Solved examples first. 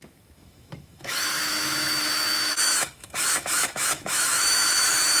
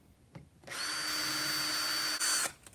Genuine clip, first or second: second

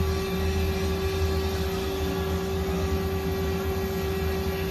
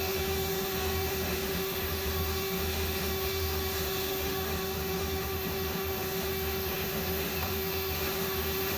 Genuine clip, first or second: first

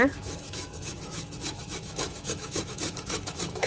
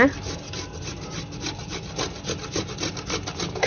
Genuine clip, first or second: second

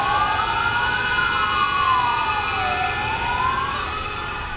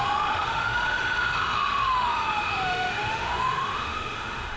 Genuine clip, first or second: first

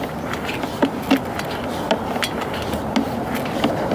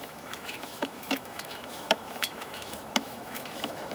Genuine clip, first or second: first